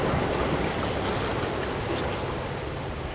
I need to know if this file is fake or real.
real